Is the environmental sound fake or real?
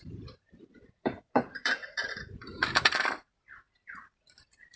fake